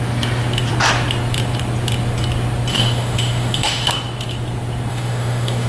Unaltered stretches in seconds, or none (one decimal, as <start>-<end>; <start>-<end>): 0.0-2.7; 3.9-4.9